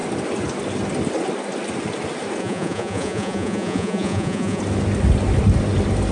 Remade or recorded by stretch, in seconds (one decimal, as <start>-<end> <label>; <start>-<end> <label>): 0.0-2.4 recorded; 2.4-4.6 remade; 4.6-6.1 recorded